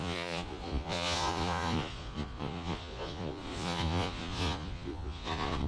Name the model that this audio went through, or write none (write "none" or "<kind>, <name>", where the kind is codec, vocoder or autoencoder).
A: vocoder, Vocos